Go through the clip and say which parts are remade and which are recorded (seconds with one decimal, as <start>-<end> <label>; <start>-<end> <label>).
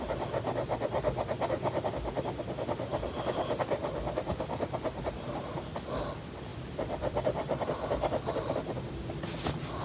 0.0-6.5 recorded; 6.5-7.6 remade; 7.6-9.8 recorded